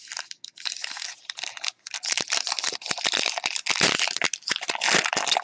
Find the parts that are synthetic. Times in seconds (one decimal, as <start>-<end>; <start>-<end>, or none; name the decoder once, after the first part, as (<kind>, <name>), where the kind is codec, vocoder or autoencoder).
none